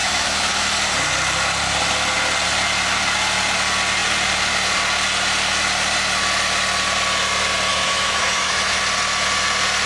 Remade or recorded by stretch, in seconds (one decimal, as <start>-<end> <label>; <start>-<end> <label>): 0.0-0.5 remade; 0.5-7.7 recorded; 7.7-8.8 remade; 8.8-9.9 recorded